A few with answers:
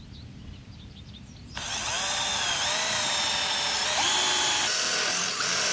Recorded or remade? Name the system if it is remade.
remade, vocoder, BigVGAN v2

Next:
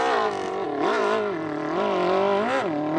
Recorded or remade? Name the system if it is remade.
recorded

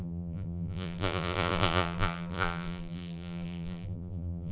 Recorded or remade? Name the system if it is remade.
remade, vocoder, BigVGAN v2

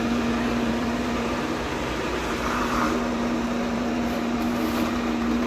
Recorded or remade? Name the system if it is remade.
remade, vocoder, BigVGAN v2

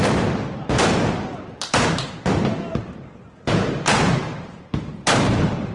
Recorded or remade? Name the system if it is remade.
remade, vocoder, BigVGAN v2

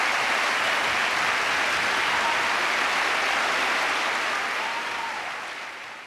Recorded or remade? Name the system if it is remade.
recorded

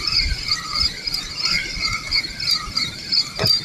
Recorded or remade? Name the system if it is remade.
remade, vocoder, BigVGAN v2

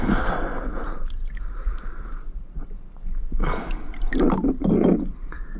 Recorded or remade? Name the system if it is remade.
remade, vocoder, BigVGAN v2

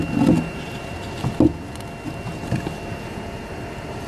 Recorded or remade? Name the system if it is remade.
recorded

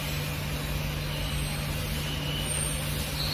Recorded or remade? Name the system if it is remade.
recorded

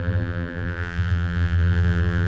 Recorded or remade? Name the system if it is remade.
remade, vocoder, BigVGAN v2